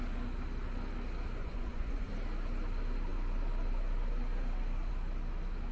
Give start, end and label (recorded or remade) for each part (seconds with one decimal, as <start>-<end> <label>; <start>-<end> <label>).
0.0-1.4 recorded; 1.4-2.1 remade; 2.1-5.7 recorded